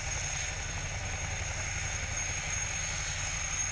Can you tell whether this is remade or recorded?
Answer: recorded